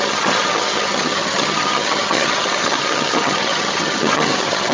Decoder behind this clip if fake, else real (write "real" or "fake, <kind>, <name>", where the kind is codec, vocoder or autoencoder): fake, vocoder, HiFi-GAN